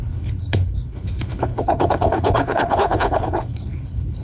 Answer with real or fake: fake